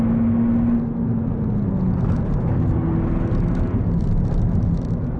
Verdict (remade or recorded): recorded